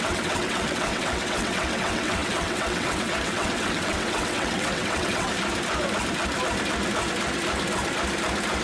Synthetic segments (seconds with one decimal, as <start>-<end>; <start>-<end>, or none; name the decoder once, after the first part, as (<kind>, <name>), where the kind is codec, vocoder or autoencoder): 0.0-5.3 (vocoder, WaveNeXt)